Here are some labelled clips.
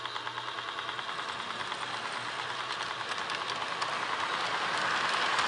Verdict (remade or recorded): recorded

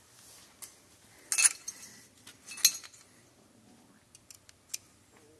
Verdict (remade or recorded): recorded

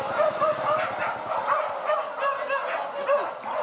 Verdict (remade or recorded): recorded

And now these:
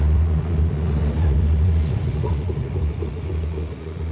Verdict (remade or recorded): remade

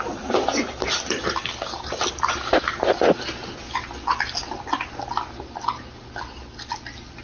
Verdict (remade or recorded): recorded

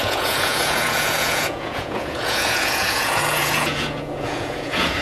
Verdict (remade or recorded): remade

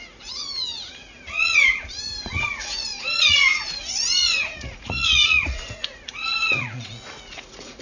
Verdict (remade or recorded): remade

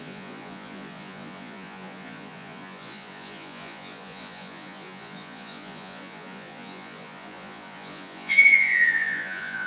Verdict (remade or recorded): remade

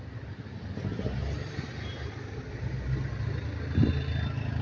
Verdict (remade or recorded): recorded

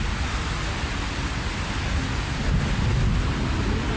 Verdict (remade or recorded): recorded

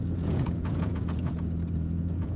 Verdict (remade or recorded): remade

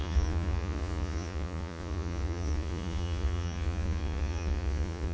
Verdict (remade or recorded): remade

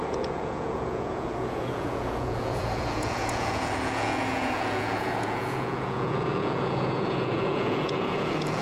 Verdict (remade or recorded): remade